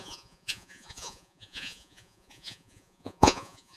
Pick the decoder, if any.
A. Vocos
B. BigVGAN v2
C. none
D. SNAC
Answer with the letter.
A